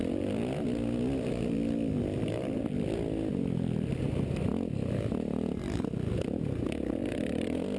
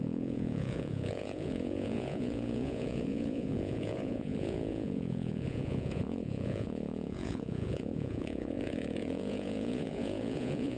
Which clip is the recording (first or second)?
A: first